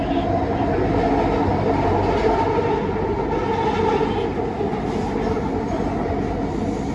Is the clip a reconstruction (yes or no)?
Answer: no